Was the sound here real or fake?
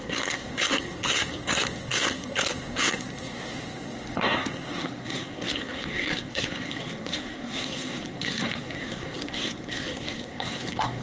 fake